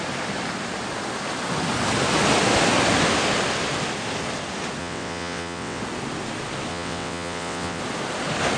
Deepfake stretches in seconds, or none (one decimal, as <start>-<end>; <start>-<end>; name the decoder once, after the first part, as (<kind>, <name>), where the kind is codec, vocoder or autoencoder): 4.8-5.8 (vocoder, WaveNeXt); 6.7-7.8